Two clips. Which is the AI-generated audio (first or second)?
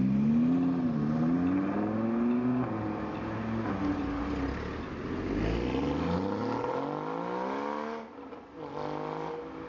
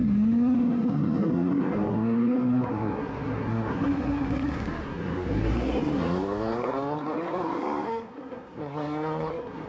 second